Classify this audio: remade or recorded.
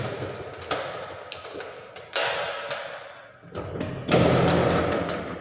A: recorded